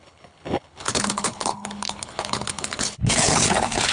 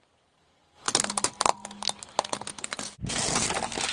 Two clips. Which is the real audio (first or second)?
second